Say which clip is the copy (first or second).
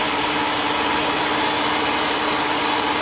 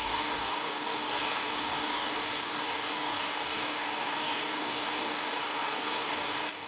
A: second